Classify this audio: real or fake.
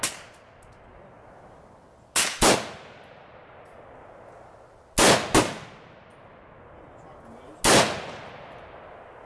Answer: real